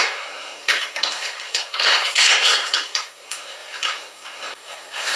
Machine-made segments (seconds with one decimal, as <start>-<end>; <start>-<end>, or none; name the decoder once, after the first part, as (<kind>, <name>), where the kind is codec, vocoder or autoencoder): 0.0-5.2 (codec, SNAC)